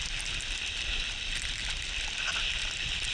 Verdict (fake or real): fake